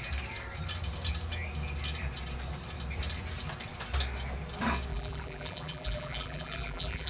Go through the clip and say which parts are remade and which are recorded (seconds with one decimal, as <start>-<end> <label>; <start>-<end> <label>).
0.0-4.9 recorded; 4.9-7.1 remade